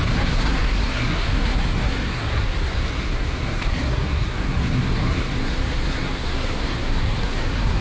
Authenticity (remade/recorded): remade